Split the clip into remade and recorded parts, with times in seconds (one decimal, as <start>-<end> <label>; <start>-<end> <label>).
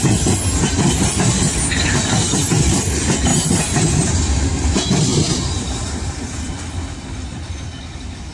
0.0-3.3 recorded; 3.3-4.0 remade; 4.0-5.1 recorded; 5.1-6.5 remade; 6.5-8.3 recorded